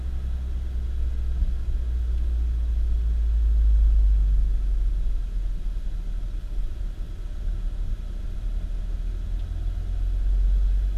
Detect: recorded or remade recorded